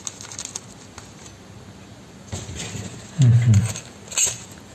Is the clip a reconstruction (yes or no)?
no